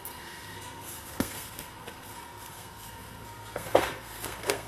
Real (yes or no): no